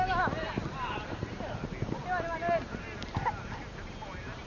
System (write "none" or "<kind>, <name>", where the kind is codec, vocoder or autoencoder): none